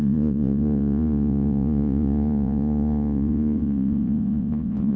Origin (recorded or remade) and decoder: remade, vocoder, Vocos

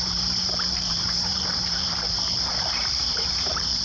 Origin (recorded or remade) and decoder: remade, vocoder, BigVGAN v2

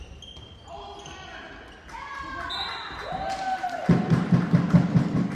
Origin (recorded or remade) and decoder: recorded